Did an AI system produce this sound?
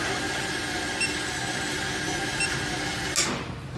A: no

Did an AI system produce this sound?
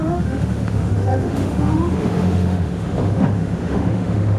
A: yes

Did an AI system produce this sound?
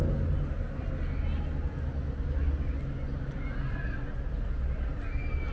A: no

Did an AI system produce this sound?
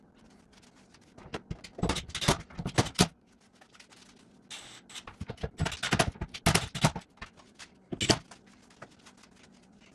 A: no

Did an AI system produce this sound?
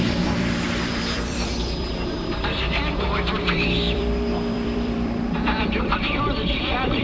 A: yes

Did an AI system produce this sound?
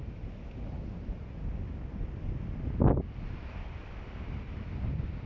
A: no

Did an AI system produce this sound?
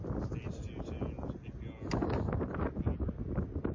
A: no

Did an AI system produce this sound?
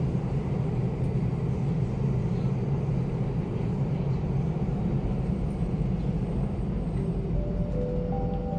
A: no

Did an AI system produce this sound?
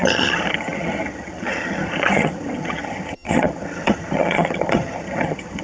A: yes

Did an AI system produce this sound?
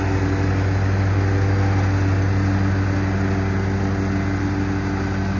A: no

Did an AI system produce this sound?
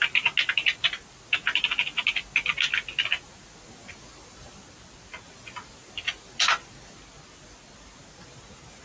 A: no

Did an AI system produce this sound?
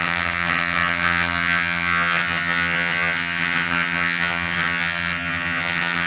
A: yes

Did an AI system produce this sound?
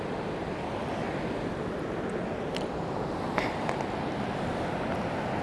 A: no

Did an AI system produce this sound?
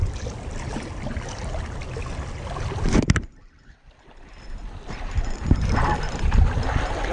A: no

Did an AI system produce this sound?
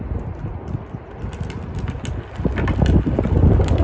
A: no